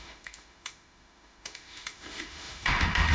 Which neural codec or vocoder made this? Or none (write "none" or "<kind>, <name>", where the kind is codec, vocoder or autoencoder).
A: autoencoder, DAC-VAE